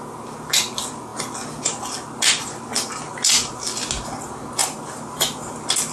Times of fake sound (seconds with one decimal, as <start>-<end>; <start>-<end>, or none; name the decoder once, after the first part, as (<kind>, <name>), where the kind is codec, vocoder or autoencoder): 4.6-5.5 (vocoder, BigVGAN v2)